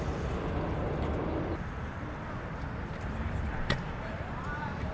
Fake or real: fake